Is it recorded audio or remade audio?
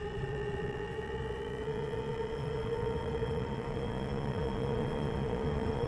remade